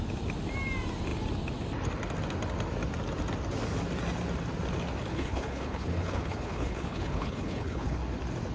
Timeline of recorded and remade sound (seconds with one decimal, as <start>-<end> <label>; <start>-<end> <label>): 0.0-5.1 recorded; 5.1-8.0 remade; 8.0-8.5 recorded